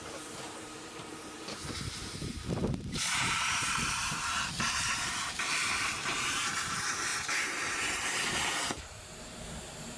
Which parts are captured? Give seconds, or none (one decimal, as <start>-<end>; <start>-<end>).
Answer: 7.1-8.7